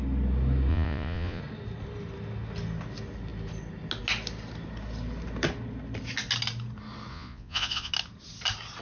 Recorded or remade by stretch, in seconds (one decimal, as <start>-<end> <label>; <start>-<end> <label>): 0.0-0.7 recorded; 0.7-1.4 remade; 1.4-7.1 recorded; 7.1-7.9 remade; 7.9-8.8 recorded